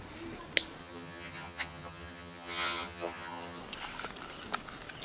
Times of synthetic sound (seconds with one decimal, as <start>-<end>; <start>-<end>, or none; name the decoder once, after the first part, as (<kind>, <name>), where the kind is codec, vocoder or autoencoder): 0.8-3.6 (vocoder, HiFi-GAN)